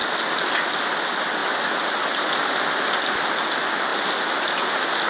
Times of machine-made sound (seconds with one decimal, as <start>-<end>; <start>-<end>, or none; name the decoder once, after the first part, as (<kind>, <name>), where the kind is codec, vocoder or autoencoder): none